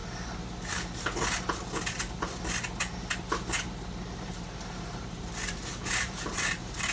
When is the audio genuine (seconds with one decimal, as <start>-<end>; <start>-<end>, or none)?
0.0-4.1